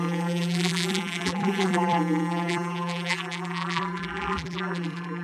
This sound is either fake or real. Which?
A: fake